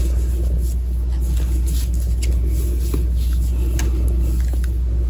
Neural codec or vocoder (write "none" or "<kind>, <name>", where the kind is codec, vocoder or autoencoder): none